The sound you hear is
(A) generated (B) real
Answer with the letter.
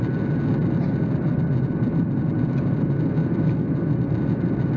B